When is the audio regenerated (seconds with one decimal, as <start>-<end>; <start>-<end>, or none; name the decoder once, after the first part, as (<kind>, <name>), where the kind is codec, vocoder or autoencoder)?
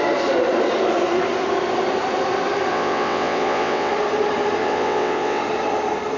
2.7-3.9 (vocoder, WaveNeXt); 4.6-5.4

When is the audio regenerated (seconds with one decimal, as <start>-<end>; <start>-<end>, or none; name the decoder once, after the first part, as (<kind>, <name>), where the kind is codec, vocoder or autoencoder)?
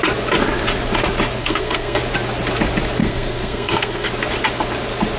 1.4-2.0 (codec, SNAC); 3.0-4.1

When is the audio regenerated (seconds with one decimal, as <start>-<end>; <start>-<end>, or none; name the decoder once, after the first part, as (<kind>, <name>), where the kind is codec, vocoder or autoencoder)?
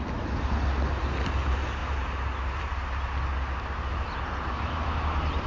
none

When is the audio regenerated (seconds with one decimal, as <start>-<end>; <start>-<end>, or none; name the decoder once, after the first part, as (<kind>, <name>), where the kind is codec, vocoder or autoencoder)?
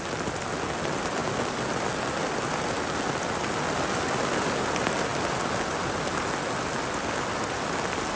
none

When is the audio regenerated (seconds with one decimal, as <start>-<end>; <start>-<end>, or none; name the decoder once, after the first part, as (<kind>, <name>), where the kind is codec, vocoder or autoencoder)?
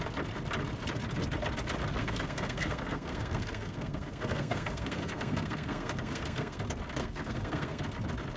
2.0-6.6 (codec, SNAC); 7.0-7.8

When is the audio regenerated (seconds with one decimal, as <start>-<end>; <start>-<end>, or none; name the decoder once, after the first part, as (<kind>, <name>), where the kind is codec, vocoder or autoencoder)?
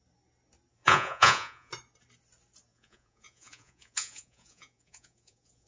0.7-1.7 (vocoder, Vocos); 2.7-5.7